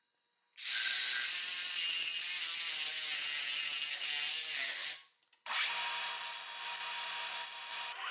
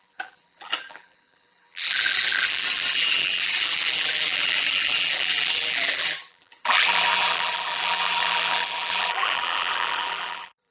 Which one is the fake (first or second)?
second